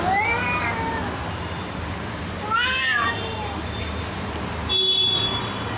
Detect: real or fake real